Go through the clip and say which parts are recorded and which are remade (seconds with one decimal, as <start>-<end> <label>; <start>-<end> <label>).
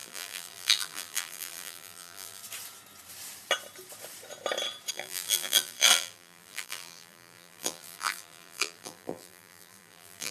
0.0-2.4 remade; 2.4-4.9 recorded; 4.9-10.3 remade